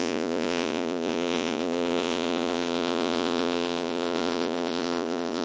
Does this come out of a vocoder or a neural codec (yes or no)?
yes